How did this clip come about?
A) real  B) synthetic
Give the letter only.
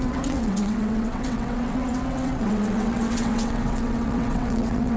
B